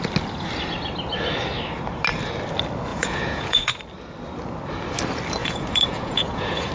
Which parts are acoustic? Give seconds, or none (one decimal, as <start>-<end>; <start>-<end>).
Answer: 0.0-2.9; 3.8-5.4